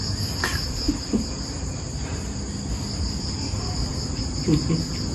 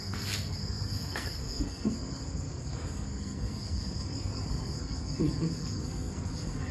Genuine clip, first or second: first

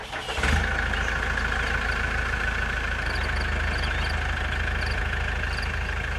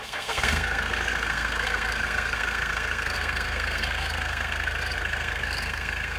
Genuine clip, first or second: first